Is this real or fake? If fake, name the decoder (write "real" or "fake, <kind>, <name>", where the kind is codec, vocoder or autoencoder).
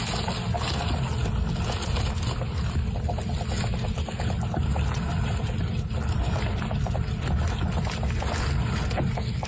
real